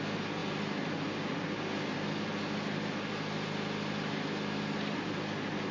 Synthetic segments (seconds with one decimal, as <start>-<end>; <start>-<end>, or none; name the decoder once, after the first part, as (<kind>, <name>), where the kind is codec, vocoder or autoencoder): none

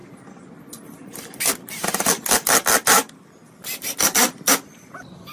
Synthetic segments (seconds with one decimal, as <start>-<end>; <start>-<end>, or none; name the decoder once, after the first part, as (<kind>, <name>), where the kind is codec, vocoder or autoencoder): none

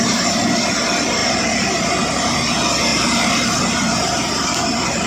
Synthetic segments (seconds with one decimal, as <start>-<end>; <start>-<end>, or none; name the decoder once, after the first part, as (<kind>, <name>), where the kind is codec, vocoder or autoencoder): 1.2-1.9 (vocoder, BigVGAN v2); 2.9-3.8

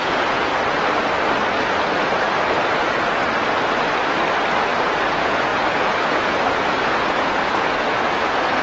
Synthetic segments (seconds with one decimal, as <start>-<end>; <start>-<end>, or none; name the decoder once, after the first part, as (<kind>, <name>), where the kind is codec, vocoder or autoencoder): 0.0-0.5 (vocoder, Vocos); 4.8-8.6